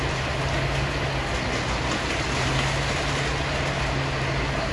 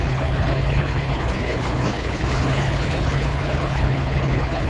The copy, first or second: second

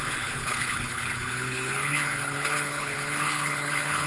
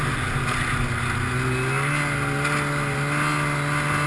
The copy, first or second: first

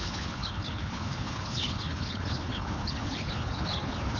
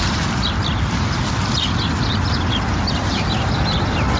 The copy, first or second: first